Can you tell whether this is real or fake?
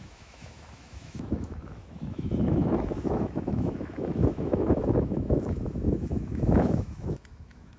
fake